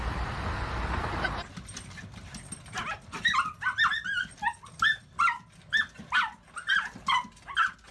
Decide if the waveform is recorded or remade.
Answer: recorded